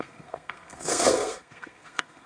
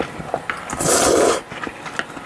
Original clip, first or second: second